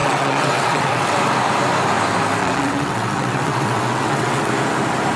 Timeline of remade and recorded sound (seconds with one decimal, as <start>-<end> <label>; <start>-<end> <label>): 0.0-1.2 remade; 1.2-2.4 recorded; 2.4-4.5 remade; 4.5-5.2 recorded